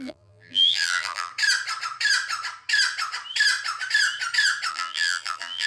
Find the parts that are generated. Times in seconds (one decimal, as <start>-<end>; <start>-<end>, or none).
0.0-1.3; 4.7-5.7